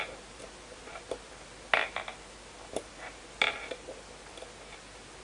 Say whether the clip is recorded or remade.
recorded